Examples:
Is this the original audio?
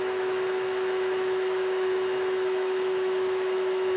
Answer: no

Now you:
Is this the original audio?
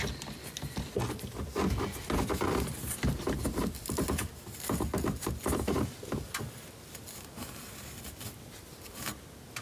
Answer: yes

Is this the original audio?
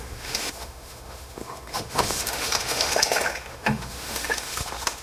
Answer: no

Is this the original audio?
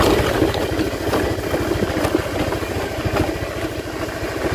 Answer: yes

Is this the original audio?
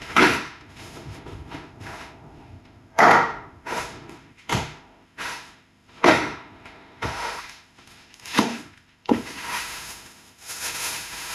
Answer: no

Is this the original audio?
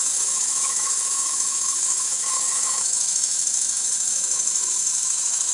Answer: no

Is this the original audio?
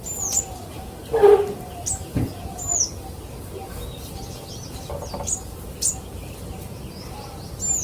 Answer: yes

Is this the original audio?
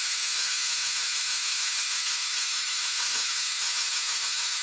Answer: no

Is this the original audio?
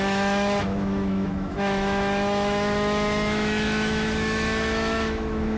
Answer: no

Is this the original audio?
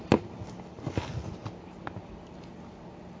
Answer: yes